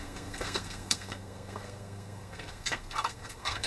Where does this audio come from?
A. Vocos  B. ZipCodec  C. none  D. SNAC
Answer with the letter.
D